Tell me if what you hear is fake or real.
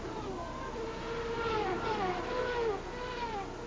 real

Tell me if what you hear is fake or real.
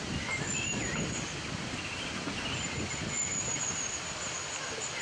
real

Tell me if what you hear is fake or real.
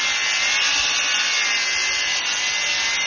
real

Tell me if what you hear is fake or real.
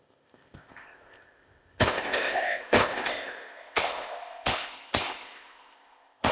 fake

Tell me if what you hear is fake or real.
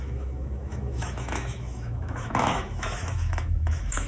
fake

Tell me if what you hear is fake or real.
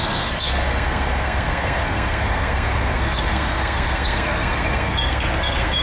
fake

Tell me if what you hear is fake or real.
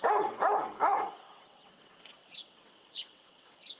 fake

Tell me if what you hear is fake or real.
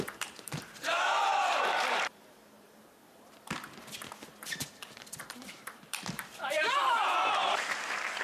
fake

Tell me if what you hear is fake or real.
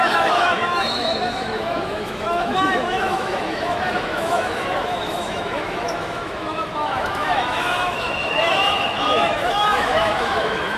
fake